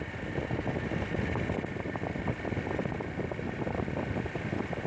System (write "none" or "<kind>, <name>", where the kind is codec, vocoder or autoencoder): none